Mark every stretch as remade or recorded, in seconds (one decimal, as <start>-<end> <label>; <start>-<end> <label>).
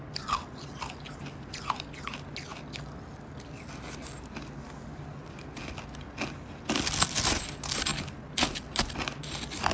0.0-9.7 recorded